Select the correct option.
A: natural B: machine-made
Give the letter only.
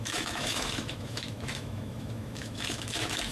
B